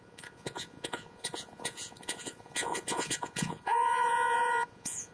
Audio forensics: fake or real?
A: fake